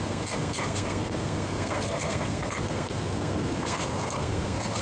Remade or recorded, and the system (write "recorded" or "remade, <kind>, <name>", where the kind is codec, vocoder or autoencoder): remade, codec, SNAC